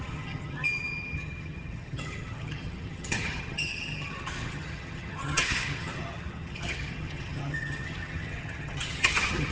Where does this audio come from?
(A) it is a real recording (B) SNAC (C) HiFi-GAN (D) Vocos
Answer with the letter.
C